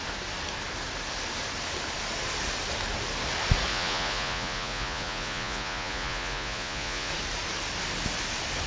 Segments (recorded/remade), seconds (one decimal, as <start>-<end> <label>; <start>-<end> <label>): 0.0-3.7 recorded; 3.7-7.1 remade; 7.1-8.7 recorded